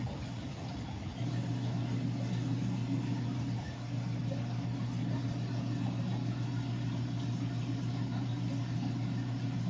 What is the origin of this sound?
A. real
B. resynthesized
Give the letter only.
A